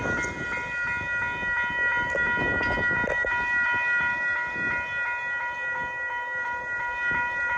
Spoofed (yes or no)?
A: no